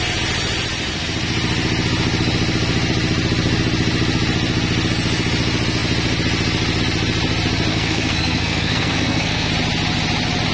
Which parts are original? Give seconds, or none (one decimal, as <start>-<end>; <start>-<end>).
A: 0.0-7.7; 9.5-10.5